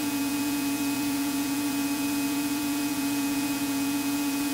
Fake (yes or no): yes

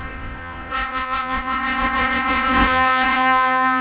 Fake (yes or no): yes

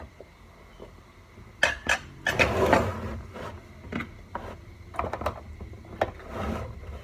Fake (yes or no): no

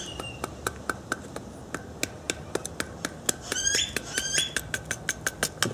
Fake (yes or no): no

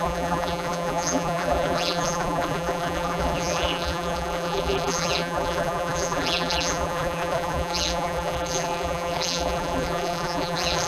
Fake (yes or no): yes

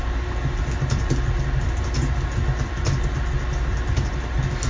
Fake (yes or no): no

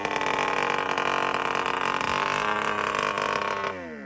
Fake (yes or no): no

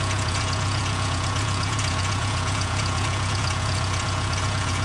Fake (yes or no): yes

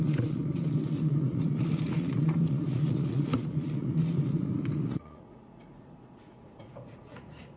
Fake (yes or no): yes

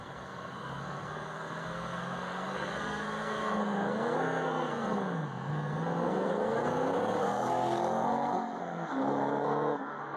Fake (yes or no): yes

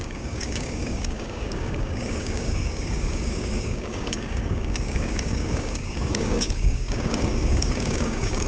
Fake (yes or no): yes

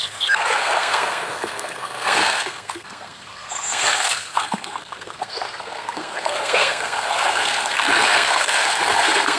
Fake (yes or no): yes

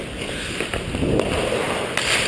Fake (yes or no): no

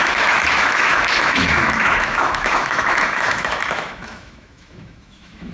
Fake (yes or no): yes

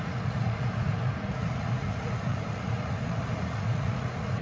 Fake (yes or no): yes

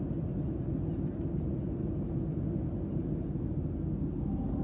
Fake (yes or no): no